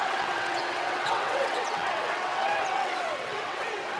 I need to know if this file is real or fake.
fake